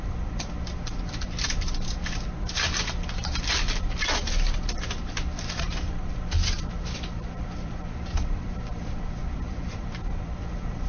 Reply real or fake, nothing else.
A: fake